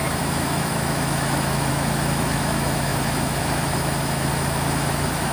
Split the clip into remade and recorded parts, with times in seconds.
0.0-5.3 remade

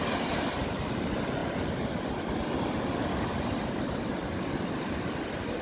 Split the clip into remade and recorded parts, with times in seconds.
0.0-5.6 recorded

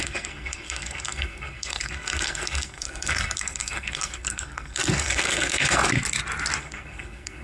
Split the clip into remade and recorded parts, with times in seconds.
0.0-5.8 remade; 5.8-6.6 recorded; 6.6-7.4 remade